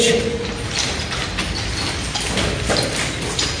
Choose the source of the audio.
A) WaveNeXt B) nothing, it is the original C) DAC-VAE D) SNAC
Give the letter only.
B